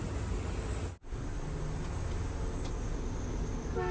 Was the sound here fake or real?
real